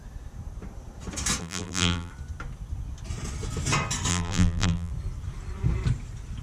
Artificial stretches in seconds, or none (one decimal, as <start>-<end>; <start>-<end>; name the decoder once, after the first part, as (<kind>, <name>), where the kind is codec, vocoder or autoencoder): 1.4-2.1 (vocoder, BigVGAN v2); 4.1-4.9